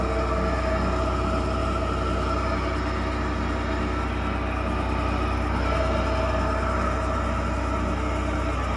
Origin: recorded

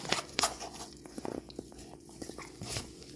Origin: remade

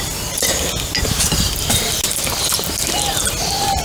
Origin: recorded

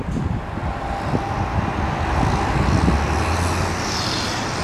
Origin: recorded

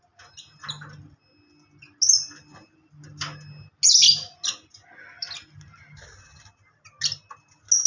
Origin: recorded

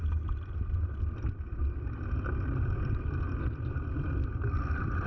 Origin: recorded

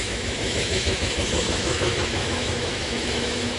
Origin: remade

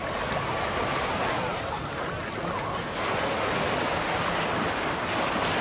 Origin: recorded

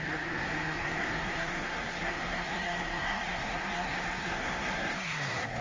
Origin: remade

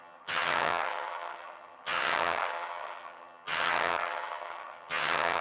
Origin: remade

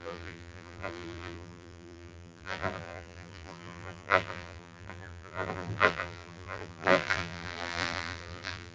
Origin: remade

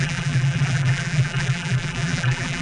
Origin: remade